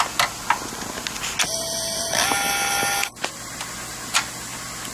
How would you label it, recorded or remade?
recorded